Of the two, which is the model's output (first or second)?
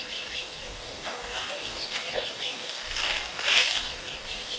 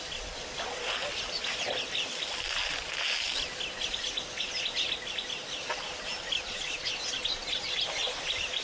first